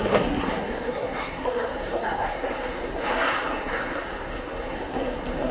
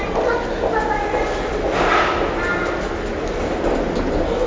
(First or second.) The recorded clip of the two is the second